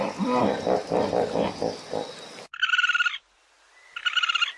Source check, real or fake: real